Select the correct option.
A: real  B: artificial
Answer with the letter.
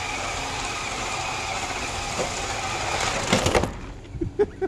A